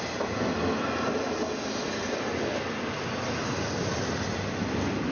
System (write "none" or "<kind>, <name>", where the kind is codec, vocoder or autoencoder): none